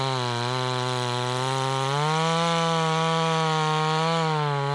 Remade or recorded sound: recorded